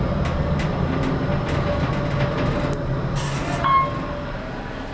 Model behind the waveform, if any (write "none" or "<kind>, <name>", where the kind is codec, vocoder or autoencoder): none